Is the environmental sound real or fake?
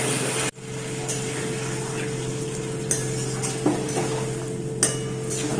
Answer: real